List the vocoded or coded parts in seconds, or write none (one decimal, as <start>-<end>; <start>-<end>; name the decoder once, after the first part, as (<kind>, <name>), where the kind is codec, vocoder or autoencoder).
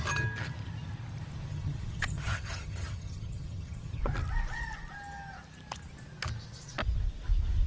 1.5-4.0 (vocoder, HiFi-GAN)